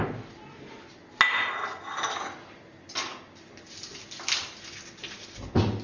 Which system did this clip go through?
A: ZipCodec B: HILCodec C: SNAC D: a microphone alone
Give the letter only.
D